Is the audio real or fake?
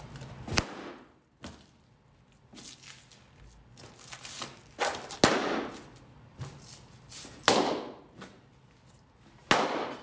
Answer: real